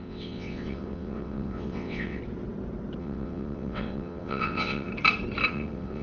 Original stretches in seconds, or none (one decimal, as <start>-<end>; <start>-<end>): 2.2-3.0; 4.9-5.5